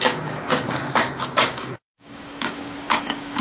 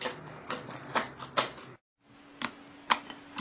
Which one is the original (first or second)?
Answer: second